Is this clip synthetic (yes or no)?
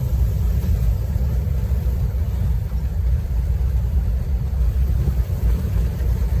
yes